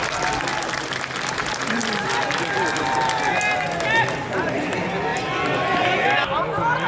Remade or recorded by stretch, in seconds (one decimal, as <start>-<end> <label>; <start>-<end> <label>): 0.0-6.9 recorded

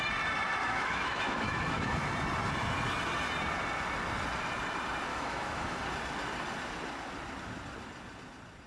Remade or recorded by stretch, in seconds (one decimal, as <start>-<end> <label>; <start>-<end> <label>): 0.0-0.6 recorded; 0.6-2.1 remade; 2.1-5.1 recorded; 5.1-5.8 remade; 5.8-8.7 recorded

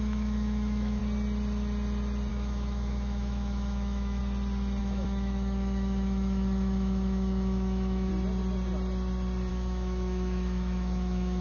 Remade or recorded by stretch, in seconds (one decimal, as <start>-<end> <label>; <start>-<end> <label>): 0.0-1.0 remade; 1.0-2.3 recorded; 2.3-4.2 remade; 4.2-4.8 recorded; 4.8-8.1 remade; 8.1-9.5 recorded; 9.5-11.4 remade

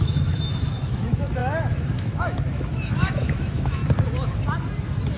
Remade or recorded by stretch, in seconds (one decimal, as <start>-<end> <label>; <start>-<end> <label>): 0.0-3.8 remade; 3.8-5.2 recorded